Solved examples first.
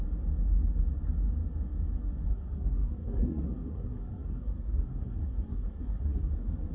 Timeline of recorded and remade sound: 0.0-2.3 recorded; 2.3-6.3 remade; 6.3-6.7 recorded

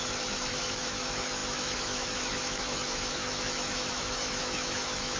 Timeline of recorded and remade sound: 0.0-5.2 remade